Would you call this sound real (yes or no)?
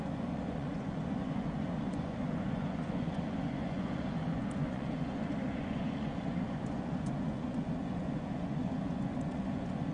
no